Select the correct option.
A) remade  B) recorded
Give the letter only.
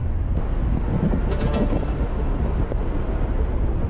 B